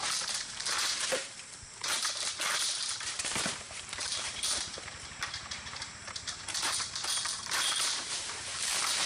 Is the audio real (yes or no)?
no